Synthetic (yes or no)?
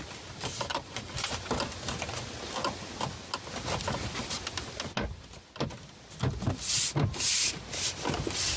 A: no